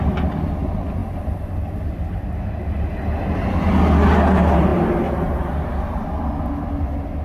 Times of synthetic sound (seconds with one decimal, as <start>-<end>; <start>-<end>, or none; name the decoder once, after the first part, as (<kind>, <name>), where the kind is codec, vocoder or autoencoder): none